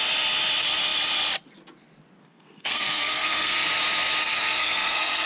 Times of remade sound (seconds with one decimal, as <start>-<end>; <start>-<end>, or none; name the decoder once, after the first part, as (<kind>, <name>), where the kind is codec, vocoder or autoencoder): 2.2-3.7 (codec, SNAC); 4.2-5.3